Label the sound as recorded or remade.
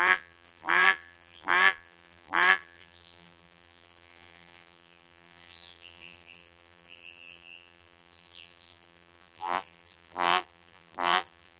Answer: remade